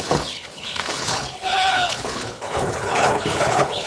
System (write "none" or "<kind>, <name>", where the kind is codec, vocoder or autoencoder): codec, HILCodec